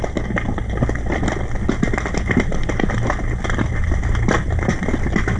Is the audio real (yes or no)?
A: yes